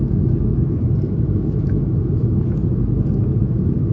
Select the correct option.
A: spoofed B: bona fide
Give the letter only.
A